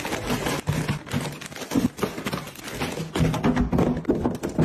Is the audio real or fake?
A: real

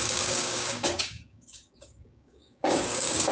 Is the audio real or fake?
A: fake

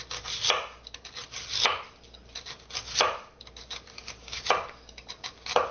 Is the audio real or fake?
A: real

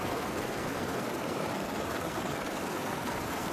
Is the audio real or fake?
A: fake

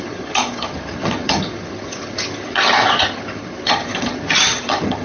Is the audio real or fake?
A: fake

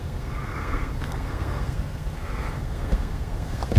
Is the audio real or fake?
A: fake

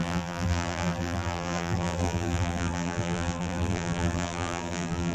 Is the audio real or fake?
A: fake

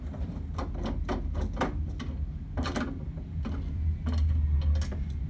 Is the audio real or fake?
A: real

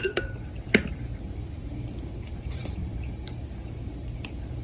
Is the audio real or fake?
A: fake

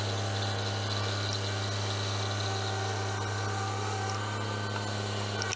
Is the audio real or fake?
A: real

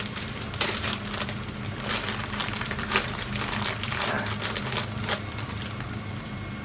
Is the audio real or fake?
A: real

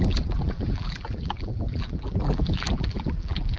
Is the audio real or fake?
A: fake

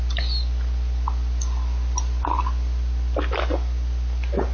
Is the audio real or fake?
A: real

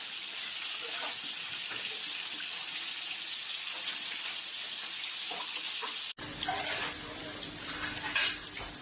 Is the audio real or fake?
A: real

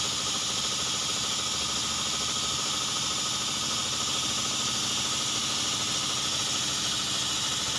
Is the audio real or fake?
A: real